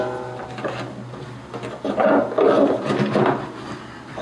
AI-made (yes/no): no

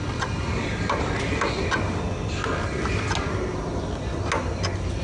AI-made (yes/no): no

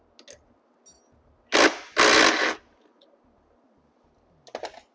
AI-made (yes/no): no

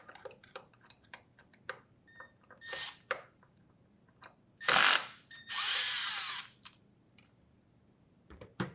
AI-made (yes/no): yes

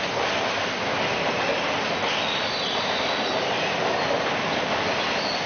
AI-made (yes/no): no